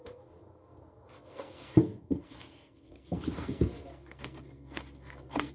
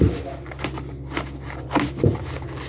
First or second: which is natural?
second